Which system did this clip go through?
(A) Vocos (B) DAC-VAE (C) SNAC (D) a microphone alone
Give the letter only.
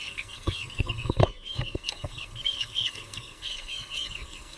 C